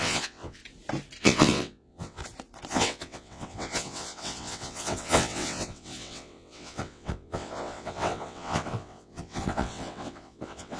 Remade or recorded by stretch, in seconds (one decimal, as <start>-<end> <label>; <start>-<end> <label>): 0.0-0.6 remade; 0.6-1.2 recorded; 1.2-2.2 remade; 2.2-2.7 recorded; 2.7-10.8 remade